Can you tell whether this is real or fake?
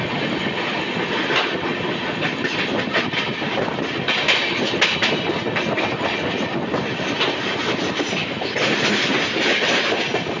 real